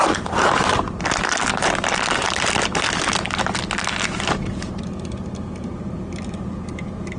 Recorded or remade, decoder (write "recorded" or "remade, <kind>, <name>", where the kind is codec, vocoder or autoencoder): recorded